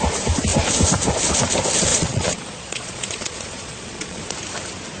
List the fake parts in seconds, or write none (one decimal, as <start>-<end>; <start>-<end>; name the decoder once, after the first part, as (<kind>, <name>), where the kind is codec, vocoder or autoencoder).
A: 1.9-4.2 (vocoder, Vocos)